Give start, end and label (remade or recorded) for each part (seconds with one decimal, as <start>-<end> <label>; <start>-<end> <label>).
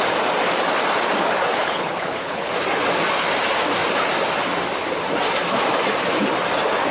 0.0-1.4 recorded; 1.4-2.5 remade; 2.5-6.9 recorded